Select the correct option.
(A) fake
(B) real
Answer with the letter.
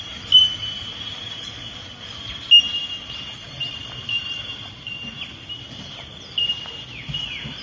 B